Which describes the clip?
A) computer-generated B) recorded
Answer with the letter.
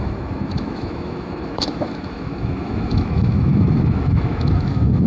A